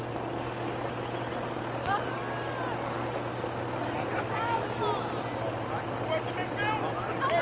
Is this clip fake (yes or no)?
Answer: no